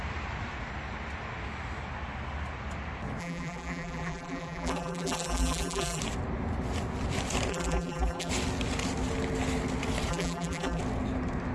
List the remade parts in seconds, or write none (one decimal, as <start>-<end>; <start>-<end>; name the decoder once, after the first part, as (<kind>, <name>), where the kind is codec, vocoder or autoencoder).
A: 3.2-6.0 (vocoder, BigVGAN v2); 7.5-8.3; 10.1-10.8